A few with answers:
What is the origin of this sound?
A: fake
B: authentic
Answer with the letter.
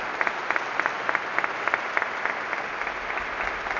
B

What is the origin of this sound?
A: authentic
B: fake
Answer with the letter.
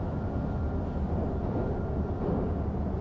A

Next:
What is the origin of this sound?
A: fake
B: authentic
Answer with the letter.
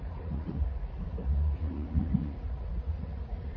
A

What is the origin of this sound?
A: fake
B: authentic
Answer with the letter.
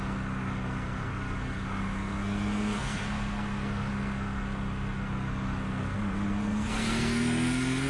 A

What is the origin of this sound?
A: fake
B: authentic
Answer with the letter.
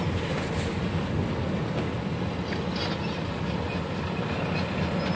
B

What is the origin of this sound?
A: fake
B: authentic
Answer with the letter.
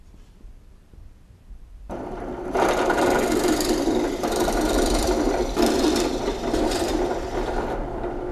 A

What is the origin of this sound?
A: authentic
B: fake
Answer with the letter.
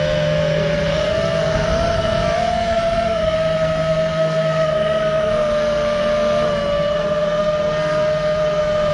B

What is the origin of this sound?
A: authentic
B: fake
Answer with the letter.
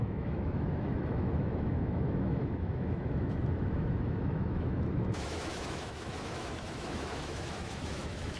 B